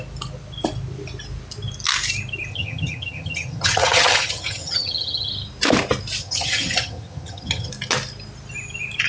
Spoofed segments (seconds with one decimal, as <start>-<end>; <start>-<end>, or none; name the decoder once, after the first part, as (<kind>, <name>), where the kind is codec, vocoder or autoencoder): 2.5-5.3 (vocoder, HiFi-GAN); 6.2-7.7